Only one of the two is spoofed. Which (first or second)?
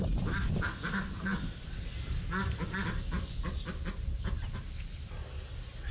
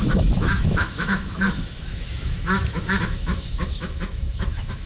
second